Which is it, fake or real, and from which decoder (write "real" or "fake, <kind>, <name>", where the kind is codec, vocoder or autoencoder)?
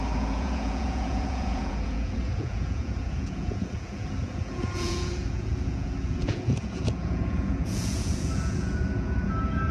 fake, vocoder, Vocos